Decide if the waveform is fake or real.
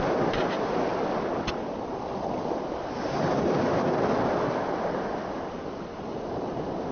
real